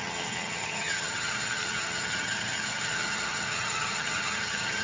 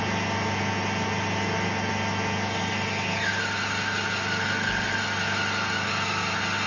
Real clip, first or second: second